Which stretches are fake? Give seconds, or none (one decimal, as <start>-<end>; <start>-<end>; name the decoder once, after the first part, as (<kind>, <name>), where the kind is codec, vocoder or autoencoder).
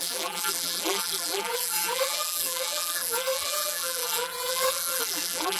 0.0-5.6 (vocoder, BigVGAN v2)